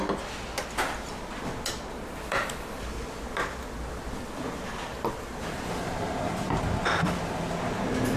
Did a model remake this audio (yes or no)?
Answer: no